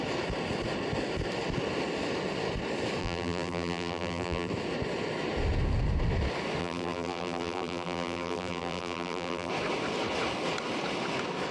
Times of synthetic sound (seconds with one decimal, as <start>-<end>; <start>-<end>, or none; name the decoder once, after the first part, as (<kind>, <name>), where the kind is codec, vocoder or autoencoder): 3.0-4.5 (vocoder, BigVGAN v2); 6.6-9.5